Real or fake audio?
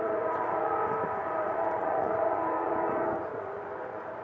fake